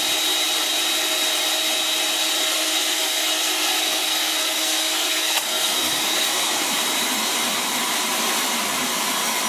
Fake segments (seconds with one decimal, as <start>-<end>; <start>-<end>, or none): 2.5-6.7